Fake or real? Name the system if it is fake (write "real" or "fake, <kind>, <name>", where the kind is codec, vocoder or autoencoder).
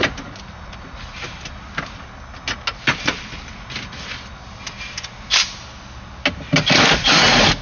real